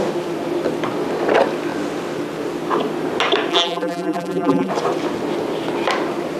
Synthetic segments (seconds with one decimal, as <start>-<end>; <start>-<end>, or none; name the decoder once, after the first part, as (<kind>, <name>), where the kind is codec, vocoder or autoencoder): 3.5-4.7 (vocoder, BigVGAN v2)